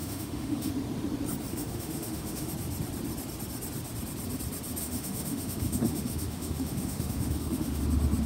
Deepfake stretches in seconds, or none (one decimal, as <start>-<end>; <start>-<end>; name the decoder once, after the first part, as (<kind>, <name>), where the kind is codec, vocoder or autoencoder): 0.0-0.7 (autoencoder, DAC-VAE); 1.5-2.5; 4.8-7.8